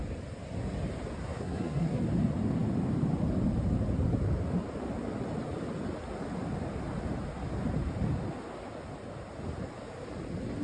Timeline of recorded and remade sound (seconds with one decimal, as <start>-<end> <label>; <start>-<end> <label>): 0.0-1.2 recorded; 1.2-2.0 remade; 2.0-10.6 recorded